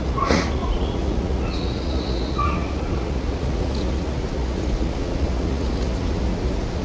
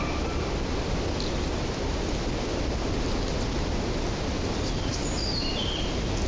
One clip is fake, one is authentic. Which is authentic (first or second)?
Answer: second